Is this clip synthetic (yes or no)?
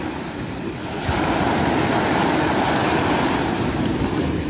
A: no